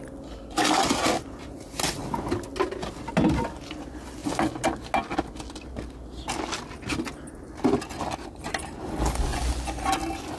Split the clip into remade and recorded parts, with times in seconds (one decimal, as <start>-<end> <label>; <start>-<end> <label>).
0.0-9.3 recorded; 9.3-9.8 remade; 9.8-10.4 recorded